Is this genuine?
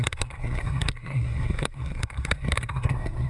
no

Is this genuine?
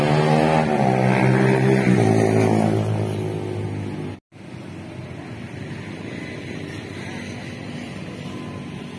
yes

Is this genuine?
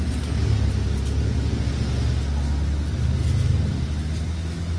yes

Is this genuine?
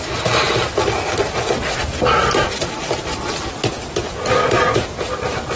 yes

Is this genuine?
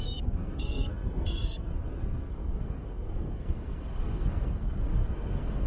no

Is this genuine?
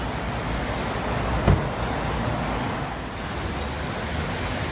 yes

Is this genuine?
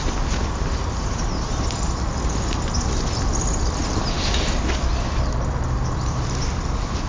yes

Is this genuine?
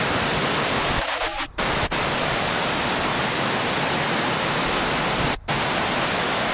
yes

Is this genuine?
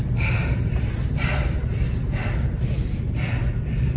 yes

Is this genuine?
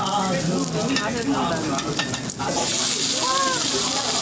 yes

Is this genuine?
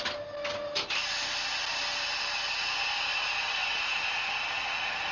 yes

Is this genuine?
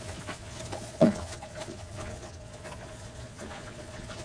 no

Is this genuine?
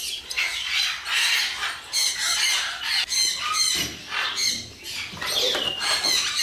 yes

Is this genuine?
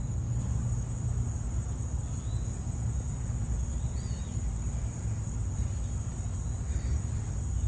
yes